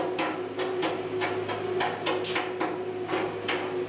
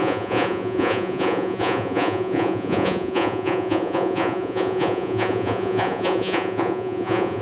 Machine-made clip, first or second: second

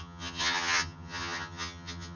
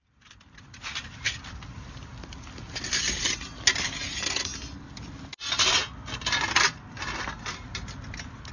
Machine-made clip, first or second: first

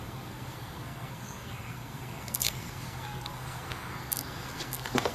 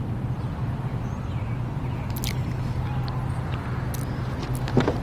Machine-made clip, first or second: first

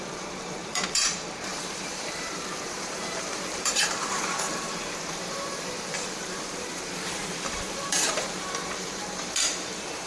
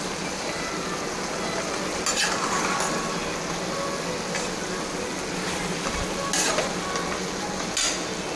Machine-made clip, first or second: first